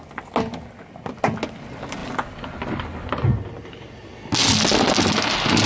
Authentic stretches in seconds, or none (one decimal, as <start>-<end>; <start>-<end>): 0.0-5.7